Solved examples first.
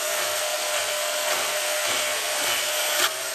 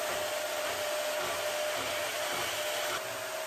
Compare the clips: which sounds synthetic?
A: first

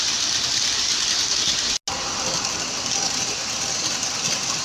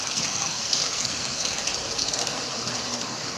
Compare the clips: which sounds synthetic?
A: second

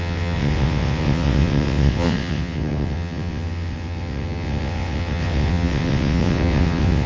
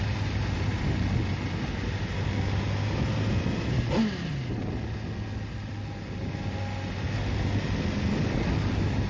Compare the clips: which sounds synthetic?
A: first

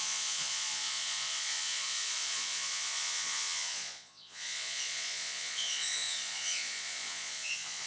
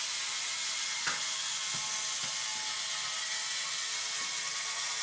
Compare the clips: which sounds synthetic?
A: first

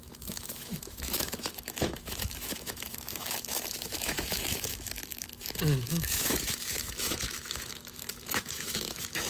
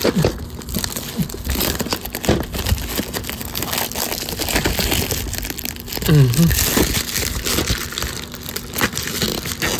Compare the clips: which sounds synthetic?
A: first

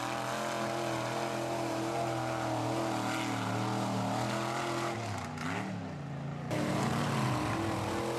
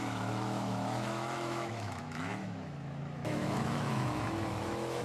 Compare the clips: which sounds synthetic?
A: second